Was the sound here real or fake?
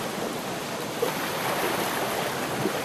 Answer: real